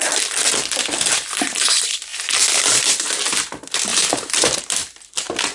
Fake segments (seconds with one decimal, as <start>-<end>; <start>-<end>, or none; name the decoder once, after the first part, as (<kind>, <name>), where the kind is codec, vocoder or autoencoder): 3.9-4.6 (vocoder, BigVGAN v2)